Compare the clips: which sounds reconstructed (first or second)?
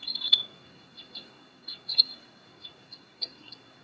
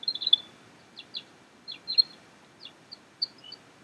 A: first